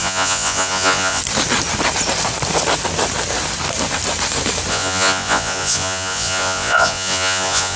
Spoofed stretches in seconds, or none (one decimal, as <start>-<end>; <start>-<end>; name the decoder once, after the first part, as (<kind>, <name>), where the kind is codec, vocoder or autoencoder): 0.0-1.2 (vocoder, Vocos); 4.7-7.8